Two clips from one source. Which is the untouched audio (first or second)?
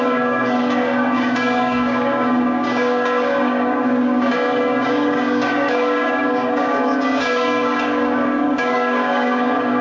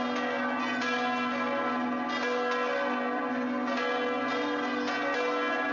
second